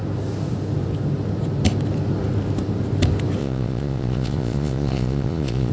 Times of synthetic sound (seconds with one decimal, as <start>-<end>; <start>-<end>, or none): 3.4-5.7